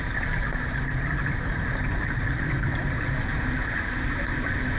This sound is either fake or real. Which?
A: real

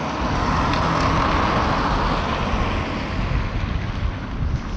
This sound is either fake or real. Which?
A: real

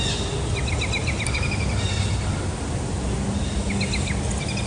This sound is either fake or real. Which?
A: real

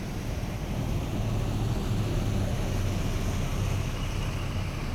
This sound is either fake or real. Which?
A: real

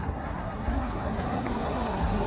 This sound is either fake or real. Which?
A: fake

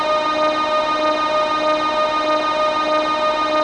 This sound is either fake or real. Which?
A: real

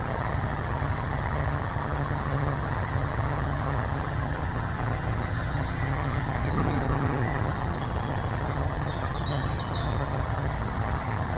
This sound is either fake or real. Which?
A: fake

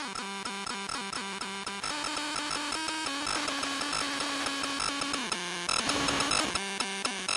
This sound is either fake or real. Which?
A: real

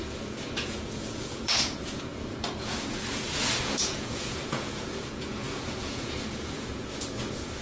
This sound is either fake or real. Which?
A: fake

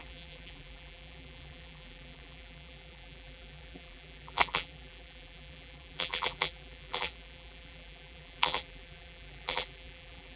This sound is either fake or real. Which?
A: fake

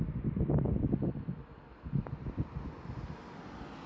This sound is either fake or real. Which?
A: real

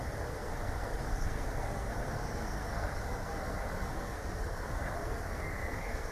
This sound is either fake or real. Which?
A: fake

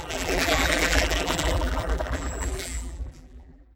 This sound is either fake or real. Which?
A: fake